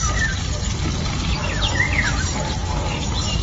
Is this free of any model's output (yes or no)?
yes